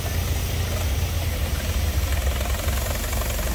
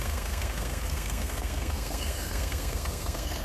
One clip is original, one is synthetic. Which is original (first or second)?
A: first